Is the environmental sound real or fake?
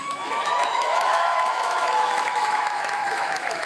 fake